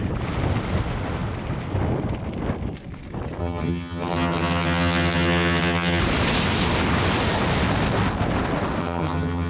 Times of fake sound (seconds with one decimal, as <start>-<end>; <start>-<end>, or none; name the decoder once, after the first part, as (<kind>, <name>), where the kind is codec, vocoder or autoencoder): 3.4-6.0 (vocoder, HiFi-GAN); 8.8-9.5